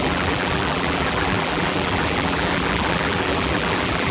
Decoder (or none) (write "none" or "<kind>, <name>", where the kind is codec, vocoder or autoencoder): vocoder, BigVGAN v2